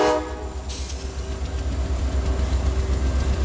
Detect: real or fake real